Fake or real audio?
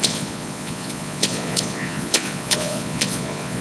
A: fake